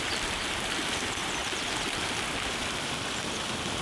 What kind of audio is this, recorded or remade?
remade